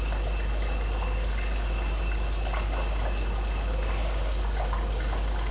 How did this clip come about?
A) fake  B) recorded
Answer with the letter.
B